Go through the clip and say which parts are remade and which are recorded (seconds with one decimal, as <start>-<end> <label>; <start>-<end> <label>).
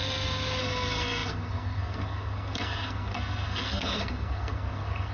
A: 0.0-0.6 recorded; 0.6-5.1 remade